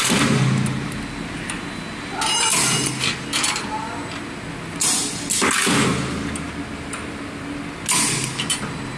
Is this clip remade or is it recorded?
recorded